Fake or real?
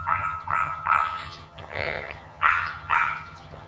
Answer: fake